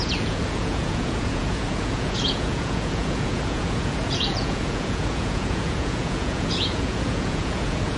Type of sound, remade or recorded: remade